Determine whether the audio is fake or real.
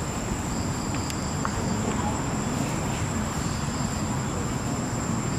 fake